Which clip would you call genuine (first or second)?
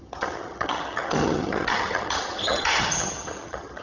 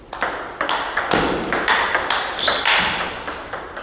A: second